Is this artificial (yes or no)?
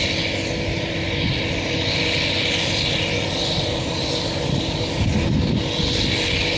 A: no